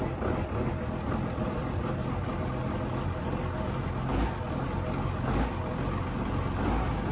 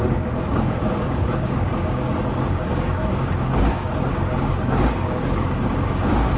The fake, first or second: second